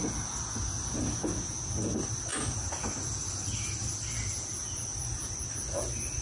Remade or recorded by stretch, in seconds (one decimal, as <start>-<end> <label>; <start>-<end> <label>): 0.0-6.2 recorded